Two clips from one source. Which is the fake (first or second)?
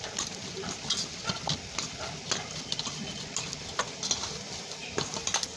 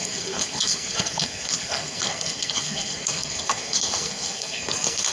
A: second